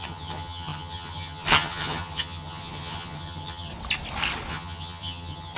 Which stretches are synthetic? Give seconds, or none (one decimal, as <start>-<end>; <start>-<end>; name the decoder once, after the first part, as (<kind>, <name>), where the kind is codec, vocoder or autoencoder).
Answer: 0.0-3.7 (vocoder, HiFi-GAN); 4.5-5.6

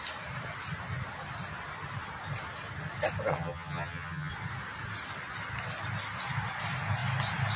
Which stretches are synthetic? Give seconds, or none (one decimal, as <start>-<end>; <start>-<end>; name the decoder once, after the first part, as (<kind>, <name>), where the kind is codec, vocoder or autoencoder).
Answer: 3.3-4.3 (vocoder, HiFi-GAN)

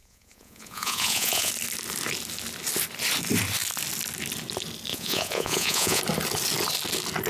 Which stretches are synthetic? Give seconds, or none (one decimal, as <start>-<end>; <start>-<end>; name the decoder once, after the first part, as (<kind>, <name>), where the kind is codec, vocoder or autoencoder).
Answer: 0.0-1.5 (vocoder, Vocos); 4.9-6.0

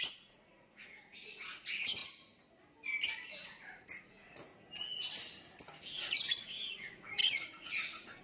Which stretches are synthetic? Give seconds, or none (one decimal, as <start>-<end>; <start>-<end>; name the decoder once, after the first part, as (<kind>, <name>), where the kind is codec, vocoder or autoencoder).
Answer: 0.0-2.0 (vocoder, Vocos); 3.3-4.5; 5.9-8.2

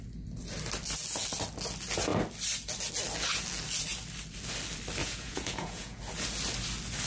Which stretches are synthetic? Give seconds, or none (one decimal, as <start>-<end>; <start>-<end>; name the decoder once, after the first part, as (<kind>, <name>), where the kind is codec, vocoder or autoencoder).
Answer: 5.0-6.0 (vocoder, Vocos)

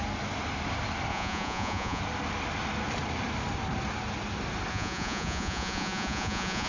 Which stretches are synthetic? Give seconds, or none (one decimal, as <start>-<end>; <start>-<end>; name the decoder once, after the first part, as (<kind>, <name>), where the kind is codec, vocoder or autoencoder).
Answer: 1.1-2.0 (vocoder, Vocos); 4.7-6.7